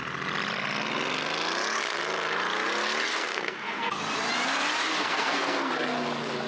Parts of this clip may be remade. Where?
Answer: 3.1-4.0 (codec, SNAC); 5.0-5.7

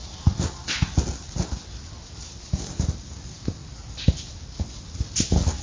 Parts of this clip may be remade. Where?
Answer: none

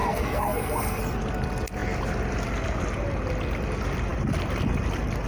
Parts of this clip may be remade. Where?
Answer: 0.0-1.0 (codec, SNAC)

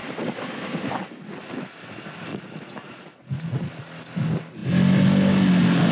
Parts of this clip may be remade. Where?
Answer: 2.3-3.7 (vocoder, Vocos)

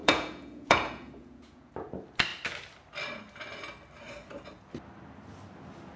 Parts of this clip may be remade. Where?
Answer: 0.0-1.7 (vocoder, Vocos)

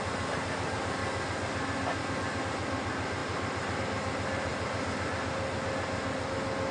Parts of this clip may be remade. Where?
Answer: 3.2-3.8 (vocoder, BigVGAN v2); 4.5-5.1

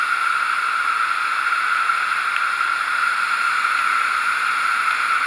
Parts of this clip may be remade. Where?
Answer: none